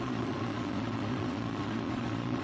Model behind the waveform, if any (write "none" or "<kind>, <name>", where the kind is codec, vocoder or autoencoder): vocoder, Vocos